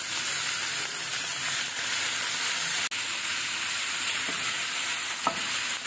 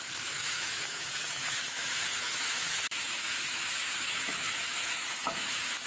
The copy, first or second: second